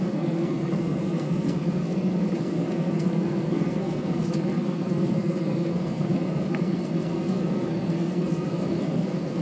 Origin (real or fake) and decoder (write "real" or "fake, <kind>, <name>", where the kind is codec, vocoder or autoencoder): fake, codec, SNAC